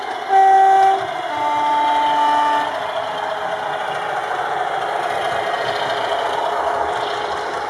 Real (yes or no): yes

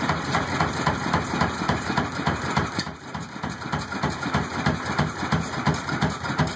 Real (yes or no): no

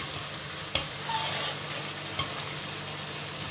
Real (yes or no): yes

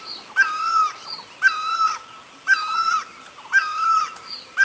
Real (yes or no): yes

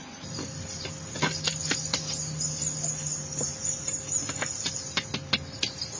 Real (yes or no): yes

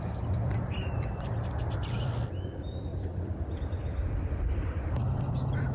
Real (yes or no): no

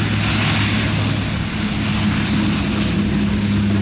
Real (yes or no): yes